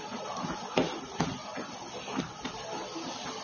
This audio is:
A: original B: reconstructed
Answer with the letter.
A